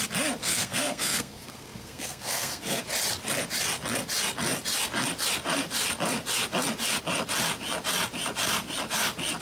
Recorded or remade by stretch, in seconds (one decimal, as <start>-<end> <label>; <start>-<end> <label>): 0.0-0.4 recorded; 0.4-2.8 remade; 2.8-9.4 recorded